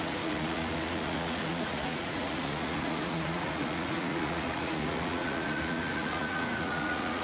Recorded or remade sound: remade